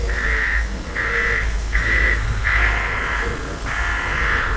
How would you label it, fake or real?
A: fake